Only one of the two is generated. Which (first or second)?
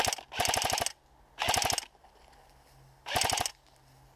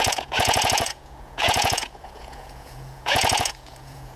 second